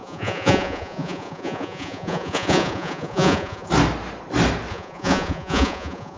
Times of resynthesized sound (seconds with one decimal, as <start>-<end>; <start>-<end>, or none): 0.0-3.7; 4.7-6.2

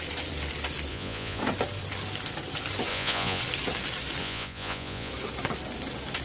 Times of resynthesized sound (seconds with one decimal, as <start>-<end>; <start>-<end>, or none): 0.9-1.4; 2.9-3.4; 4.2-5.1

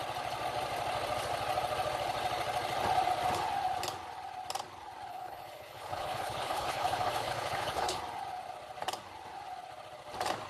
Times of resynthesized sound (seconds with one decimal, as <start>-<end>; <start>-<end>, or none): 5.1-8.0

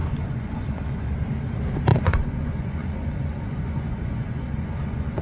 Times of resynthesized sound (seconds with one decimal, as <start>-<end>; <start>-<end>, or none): 0.0-1.1; 1.9-5.2

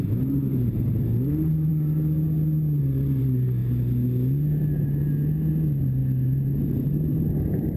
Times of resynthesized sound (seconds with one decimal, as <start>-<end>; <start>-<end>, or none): 0.0-1.7; 2.8-3.6; 5.5-7.8

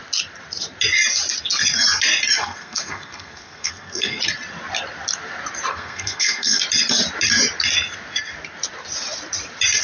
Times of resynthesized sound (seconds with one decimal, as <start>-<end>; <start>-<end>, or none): 2.4-4.2; 5.7-6.6

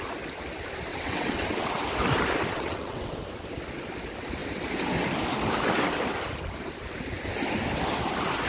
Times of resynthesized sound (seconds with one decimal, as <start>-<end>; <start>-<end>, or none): 0.9-1.7; 2.5-3.1